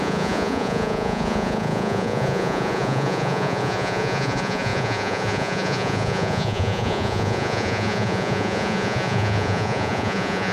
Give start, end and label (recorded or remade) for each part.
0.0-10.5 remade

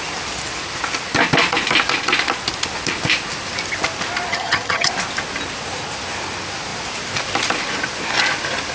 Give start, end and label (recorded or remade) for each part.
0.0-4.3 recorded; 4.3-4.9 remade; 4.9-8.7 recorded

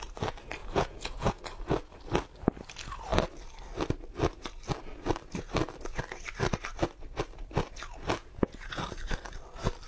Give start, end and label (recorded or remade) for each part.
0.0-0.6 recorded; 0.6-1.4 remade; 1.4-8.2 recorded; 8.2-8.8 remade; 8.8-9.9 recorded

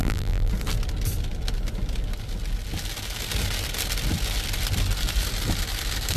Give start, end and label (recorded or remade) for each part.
0.0-0.5 remade; 0.5-6.2 recorded

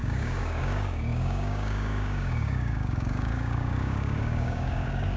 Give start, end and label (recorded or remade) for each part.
0.0-5.2 remade

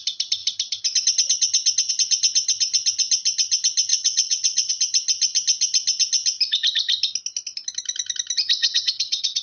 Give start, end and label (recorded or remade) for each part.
0.0-3.9 recorded; 3.9-4.7 remade; 4.7-8.6 recorded; 8.6-9.4 remade

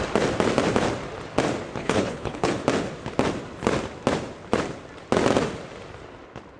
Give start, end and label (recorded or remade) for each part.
0.0-1.8 recorded; 1.8-2.5 remade; 2.5-6.6 recorded

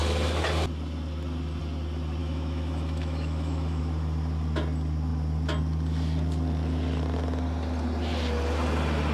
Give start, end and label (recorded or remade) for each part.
0.0-2.2 recorded; 2.2-3.8 remade; 3.8-9.1 recorded